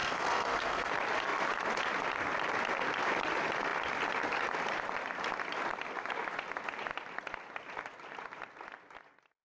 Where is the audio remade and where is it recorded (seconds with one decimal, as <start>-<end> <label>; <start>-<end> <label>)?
0.0-0.9 remade; 0.9-9.4 recorded